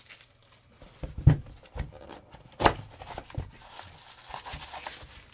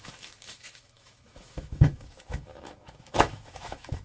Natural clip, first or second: first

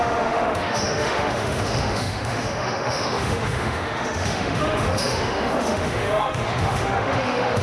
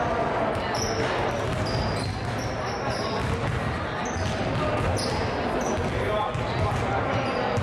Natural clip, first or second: second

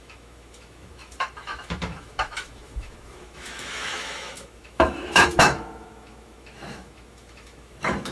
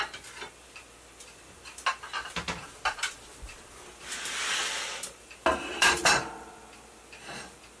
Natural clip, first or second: second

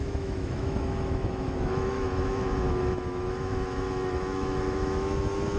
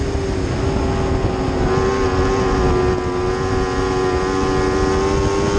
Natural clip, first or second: second